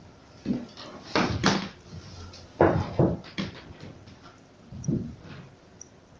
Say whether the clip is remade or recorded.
recorded